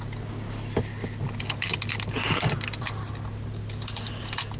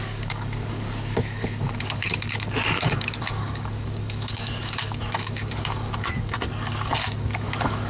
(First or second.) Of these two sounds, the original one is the first